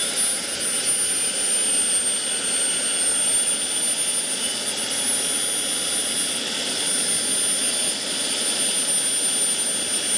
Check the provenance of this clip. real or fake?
real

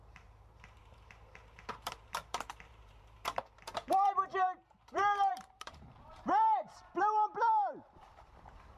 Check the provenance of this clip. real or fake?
fake